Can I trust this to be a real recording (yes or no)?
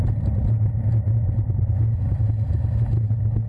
yes